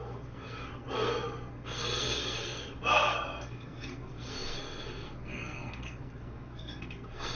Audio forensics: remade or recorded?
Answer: remade